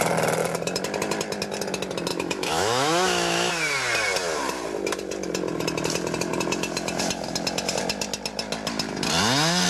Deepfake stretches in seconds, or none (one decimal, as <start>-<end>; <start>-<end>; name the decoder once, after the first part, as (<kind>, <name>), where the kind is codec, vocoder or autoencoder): 2.1-3.5 (autoencoder, DAC-VAE)